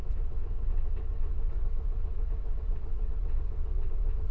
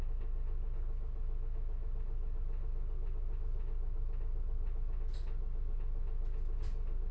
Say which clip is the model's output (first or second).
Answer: first